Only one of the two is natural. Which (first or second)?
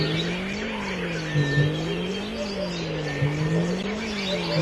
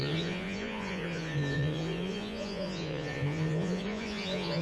first